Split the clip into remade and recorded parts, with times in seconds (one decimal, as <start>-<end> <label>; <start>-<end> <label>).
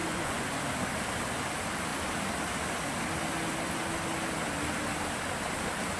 0.0-0.6 remade; 0.6-6.0 recorded